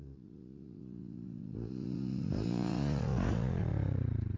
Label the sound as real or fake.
fake